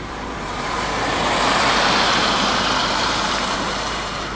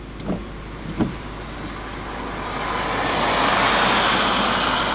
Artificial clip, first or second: first